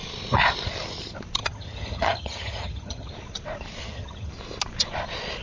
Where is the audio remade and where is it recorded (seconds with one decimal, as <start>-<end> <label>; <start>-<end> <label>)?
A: 0.0-1.4 recorded; 1.4-3.1 remade; 3.1-3.8 recorded; 3.8-4.3 remade; 4.3-5.4 recorded